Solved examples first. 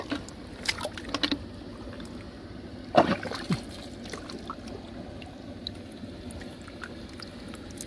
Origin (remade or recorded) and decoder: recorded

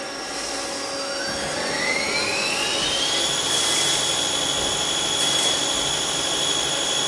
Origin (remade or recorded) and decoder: recorded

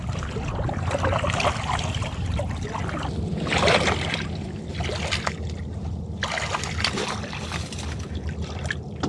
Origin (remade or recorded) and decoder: recorded